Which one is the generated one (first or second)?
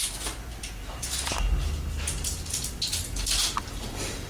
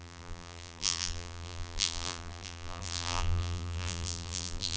second